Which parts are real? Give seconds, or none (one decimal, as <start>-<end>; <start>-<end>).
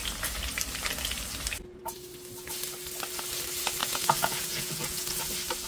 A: 0.0-3.8; 5.2-5.7